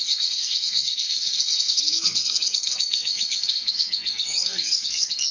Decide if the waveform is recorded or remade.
remade